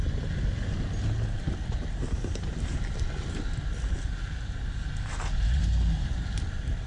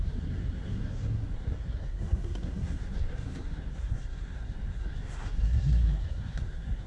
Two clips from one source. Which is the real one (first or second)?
first